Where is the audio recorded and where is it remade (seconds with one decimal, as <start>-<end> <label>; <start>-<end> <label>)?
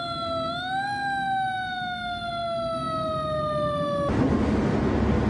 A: 0.0-5.3 recorded